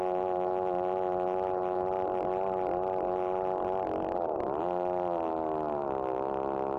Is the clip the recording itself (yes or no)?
yes